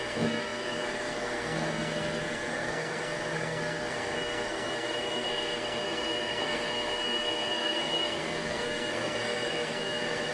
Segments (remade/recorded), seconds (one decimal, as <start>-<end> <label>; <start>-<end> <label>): 0.0-10.3 remade